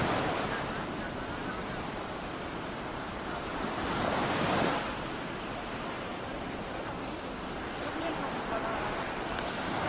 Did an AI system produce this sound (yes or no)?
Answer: yes